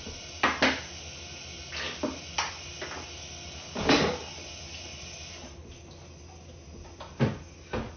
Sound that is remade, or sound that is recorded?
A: recorded